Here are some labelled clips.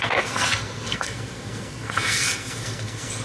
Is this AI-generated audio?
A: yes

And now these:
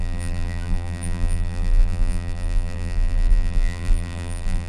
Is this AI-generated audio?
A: yes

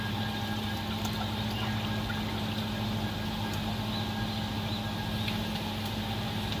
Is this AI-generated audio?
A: no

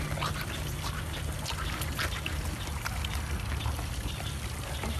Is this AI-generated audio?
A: no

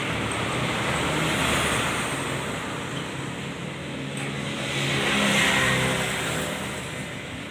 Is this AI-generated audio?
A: no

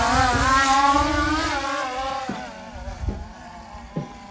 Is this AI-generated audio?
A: no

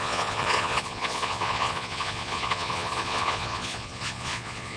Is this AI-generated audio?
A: yes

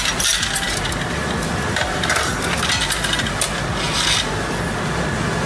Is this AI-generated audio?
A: no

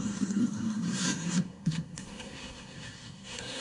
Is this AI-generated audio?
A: yes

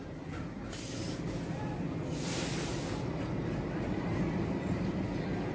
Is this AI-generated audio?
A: no